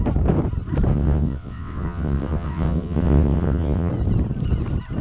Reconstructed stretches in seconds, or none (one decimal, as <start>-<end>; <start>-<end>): 0.9-3.9